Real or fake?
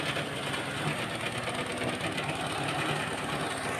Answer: real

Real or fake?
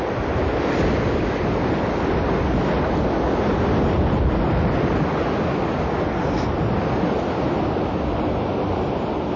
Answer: real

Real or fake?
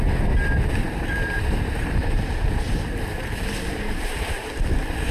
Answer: fake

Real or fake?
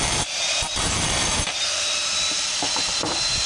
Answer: fake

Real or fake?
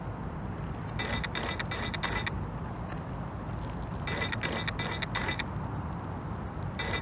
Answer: real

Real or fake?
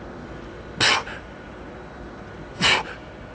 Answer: real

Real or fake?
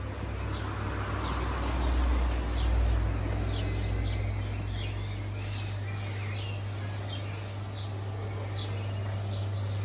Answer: real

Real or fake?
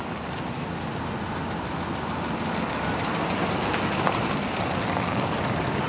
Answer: real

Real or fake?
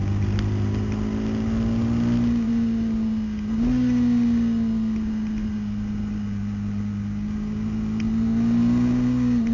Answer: real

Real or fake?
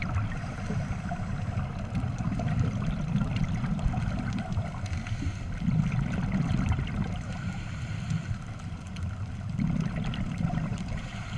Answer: fake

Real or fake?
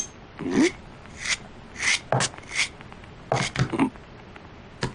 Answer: real